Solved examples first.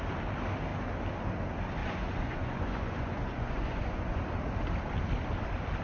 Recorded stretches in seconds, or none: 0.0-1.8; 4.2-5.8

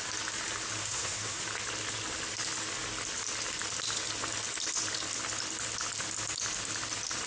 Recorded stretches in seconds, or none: 0.0-0.8; 1.4-7.3

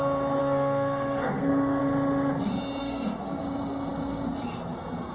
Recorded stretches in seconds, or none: 0.0-0.4; 1.8-2.8; 3.4-5.1

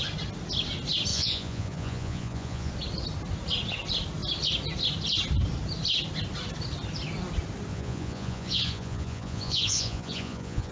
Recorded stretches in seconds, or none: 0.0-1.1; 2.7-7.7

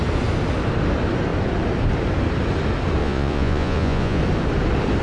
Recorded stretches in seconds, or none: 0.0-3.0; 4.2-5.0

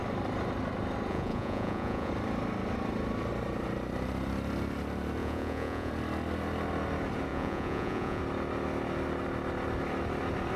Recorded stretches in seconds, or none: 0.0-1.1; 2.1-5.2; 5.9-7.3; 8.2-10.6

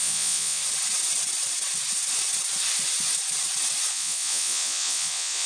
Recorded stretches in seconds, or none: 0.6-3.9

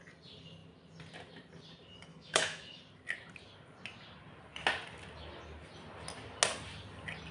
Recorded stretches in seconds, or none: 0.0-2.1; 2.8-7.3